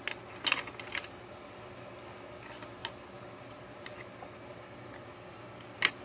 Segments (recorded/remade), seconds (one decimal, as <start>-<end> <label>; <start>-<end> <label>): 0.0-6.0 recorded